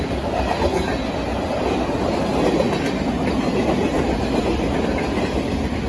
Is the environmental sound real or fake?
real